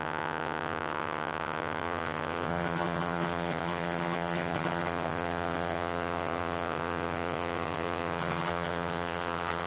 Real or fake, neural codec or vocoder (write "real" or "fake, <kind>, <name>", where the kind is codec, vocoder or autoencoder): fake, vocoder, HiFi-GAN